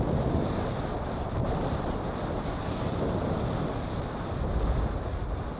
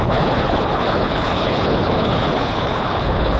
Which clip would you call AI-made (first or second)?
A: second